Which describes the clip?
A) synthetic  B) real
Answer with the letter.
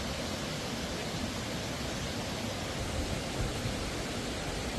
B